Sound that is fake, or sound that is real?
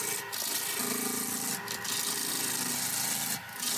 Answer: real